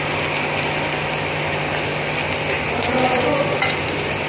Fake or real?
real